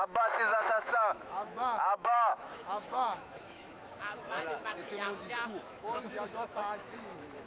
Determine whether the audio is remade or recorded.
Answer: remade